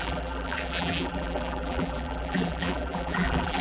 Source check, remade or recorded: remade